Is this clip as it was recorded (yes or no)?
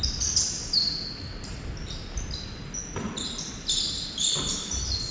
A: yes